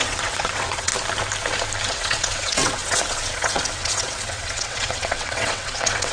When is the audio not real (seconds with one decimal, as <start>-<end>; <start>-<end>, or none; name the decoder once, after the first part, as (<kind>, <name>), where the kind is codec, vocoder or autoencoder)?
0.0-0.9 (vocoder, WaveNeXt); 1.9-6.1